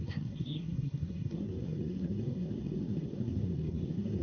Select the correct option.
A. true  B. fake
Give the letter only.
B